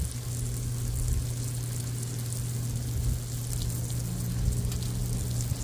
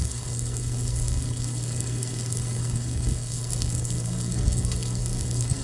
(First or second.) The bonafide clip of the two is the first